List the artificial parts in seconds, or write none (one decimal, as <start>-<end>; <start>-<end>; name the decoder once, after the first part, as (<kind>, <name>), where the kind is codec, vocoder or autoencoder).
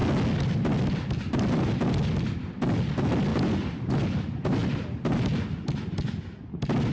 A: 3.3-3.9 (vocoder, BigVGAN v2)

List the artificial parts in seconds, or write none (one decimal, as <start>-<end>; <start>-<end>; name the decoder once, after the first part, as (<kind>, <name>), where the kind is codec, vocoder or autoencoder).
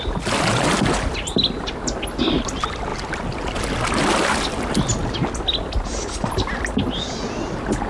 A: none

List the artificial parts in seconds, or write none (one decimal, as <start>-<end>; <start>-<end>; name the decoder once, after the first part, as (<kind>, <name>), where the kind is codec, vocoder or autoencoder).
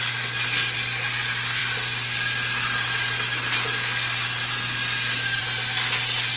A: none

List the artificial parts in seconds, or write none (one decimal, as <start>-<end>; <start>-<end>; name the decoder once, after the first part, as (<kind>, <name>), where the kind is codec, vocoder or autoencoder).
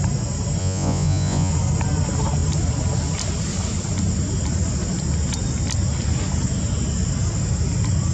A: 0.6-1.5 (vocoder, Vocos)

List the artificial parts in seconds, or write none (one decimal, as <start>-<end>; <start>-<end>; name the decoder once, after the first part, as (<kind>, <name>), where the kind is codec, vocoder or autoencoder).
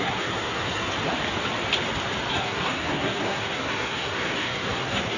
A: 0.0-0.9 (codec, SNAC); 2.3-5.2